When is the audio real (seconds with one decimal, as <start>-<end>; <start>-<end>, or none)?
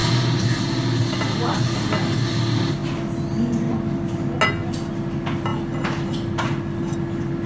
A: 0.0-7.5